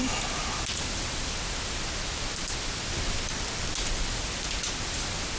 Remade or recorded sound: recorded